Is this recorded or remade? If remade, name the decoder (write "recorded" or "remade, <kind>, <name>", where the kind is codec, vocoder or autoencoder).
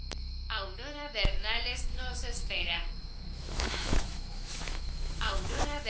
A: remade, autoencoder, DAC-VAE